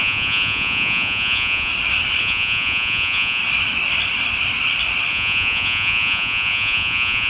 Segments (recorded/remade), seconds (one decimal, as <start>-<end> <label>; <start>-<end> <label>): 0.0-1.7 remade; 1.7-2.2 recorded; 2.2-3.4 remade; 3.4-5.1 recorded; 5.1-7.3 remade

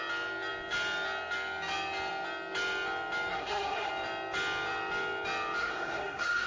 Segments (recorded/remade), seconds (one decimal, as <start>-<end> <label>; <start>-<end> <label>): 0.0-3.3 recorded; 3.3-3.9 remade; 3.9-5.6 recorded; 5.6-6.5 remade

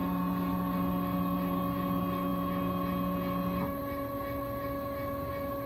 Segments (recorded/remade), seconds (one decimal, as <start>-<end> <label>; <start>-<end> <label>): 0.0-5.7 recorded

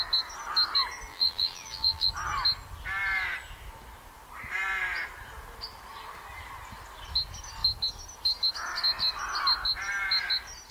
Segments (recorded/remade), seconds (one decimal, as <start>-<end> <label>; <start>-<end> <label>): 0.0-1.1 recorded; 1.1-2.1 remade; 2.1-10.7 recorded